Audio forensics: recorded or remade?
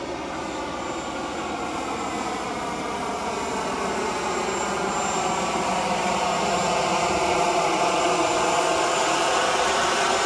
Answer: recorded